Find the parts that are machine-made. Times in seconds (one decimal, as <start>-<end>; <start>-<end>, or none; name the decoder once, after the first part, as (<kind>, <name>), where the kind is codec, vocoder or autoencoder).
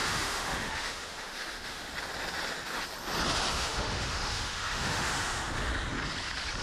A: 0.0-1.9 (autoencoder, DAC-VAE); 3.5-5.7